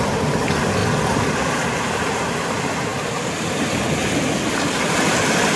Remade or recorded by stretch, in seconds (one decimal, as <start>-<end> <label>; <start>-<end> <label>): 0.0-5.6 recorded